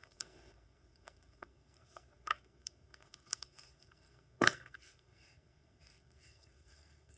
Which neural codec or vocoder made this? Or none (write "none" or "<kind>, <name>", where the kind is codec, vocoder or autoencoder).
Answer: codec, SNAC